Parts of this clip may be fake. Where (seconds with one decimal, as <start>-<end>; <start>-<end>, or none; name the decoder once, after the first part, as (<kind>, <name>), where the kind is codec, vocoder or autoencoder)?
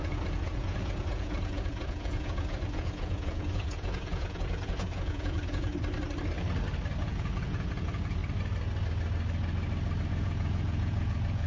0.0-5.7 (vocoder, Vocos); 7.0-8.2; 10.1-11.5